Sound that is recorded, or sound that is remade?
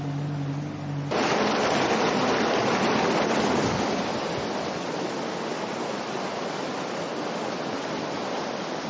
recorded